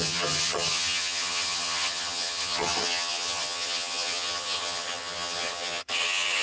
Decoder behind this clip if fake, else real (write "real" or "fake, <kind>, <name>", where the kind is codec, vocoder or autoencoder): fake, vocoder, HiFi-GAN